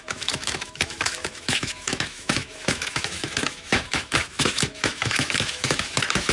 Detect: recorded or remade remade